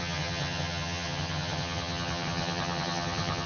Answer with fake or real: fake